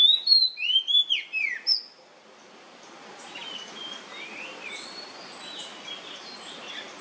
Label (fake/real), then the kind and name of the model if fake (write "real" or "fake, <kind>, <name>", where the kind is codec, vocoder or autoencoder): real